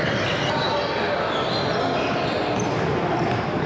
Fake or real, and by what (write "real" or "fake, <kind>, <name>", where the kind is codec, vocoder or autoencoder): real